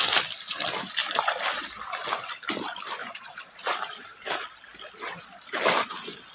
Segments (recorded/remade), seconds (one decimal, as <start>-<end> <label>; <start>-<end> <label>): 0.0-3.0 recorded; 3.0-3.7 remade; 3.7-6.3 recorded